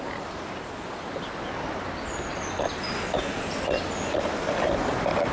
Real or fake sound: real